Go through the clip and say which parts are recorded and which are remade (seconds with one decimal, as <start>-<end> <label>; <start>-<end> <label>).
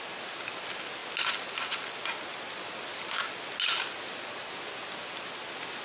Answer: 0.0-5.8 recorded